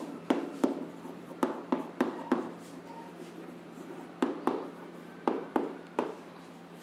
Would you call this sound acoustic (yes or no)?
no